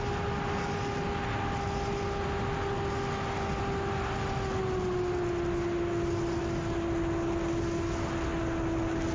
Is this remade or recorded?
recorded